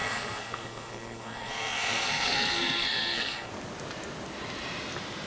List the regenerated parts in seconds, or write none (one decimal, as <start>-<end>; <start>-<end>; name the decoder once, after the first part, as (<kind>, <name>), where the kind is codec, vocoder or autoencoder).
0.0-3.5 (codec, SNAC)